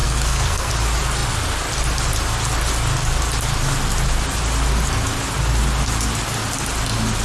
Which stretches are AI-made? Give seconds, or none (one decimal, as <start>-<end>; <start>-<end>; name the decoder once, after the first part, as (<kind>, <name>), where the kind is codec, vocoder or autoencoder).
0.0-0.7 (codec, SNAC)